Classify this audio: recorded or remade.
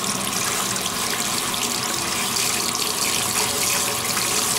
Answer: recorded